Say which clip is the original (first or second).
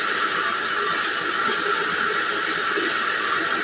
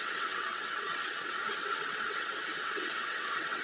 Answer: first